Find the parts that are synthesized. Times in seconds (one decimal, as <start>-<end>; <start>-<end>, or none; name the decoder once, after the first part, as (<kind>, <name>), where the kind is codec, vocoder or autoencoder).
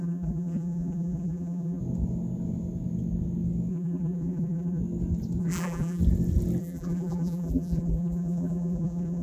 0.0-1.8 (vocoder, BigVGAN v2); 3.7-4.8; 5.4-6.0; 6.6-9.2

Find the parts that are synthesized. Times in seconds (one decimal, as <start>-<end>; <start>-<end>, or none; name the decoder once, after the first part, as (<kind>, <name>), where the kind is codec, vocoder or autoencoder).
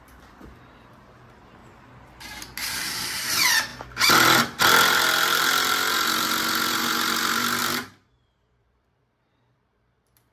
0.0-1.6 (vocoder, BigVGAN v2); 2.8-3.7; 6.7-7.6; 8.6-10.3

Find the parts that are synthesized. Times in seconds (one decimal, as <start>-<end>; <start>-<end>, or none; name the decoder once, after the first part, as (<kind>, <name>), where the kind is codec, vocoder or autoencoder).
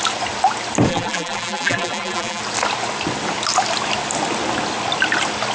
0.9-2.4 (vocoder, BigVGAN v2)